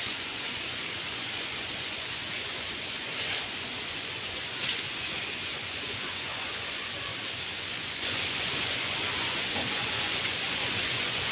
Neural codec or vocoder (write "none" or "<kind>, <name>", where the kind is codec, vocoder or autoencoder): vocoder, Vocos